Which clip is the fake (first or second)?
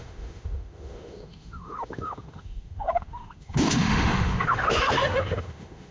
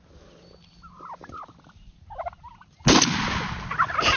first